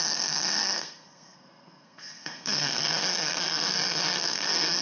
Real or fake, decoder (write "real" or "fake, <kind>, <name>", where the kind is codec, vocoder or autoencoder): fake, codec, SNAC